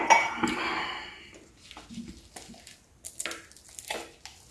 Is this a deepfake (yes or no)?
no